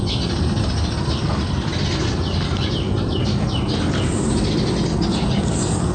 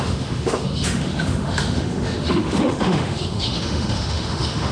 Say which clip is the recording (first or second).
first